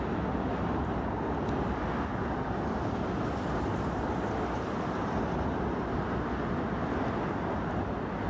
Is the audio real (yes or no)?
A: yes